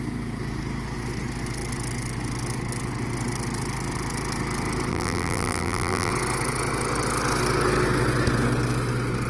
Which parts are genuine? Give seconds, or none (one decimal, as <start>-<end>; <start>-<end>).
0.0-4.9; 6.1-9.3